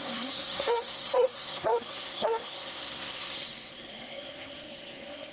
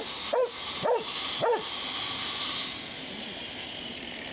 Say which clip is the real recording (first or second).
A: second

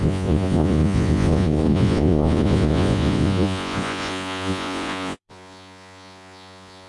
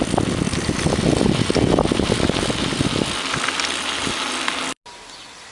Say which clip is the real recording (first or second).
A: second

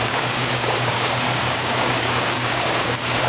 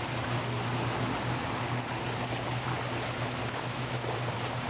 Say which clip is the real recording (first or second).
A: second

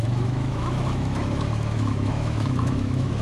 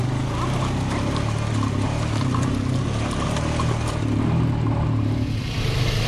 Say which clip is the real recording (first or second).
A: second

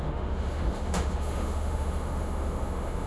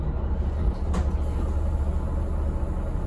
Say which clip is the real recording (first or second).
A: second